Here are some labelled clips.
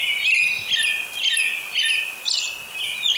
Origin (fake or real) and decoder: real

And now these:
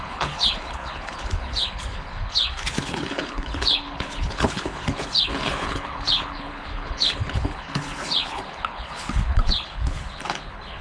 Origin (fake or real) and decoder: fake, codec, HILCodec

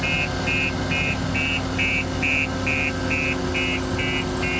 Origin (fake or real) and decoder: real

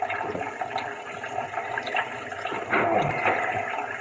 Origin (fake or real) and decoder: real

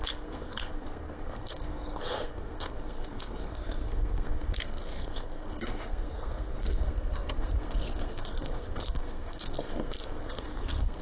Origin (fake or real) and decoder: fake, codec, SNAC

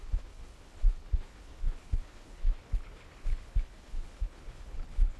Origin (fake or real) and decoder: fake, codec, HILCodec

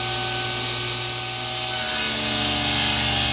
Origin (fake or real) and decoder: real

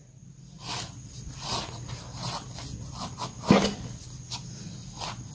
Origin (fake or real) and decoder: real